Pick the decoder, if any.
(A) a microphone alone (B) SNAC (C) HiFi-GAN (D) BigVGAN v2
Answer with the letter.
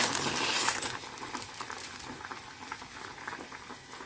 A